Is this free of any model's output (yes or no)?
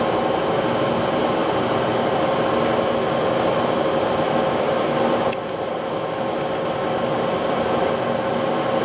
yes